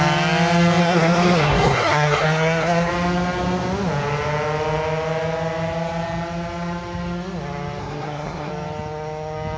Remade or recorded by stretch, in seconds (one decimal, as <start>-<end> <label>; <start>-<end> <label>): 0.0-0.8 recorded; 0.8-2.9 remade; 2.9-7.8 recorded; 7.8-8.5 remade; 8.5-9.6 recorded